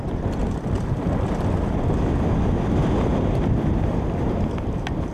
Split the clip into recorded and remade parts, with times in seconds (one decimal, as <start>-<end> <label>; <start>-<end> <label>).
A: 0.0-3.1 recorded; 3.1-3.9 remade; 3.9-5.1 recorded